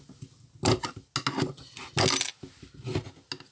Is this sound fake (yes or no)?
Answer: no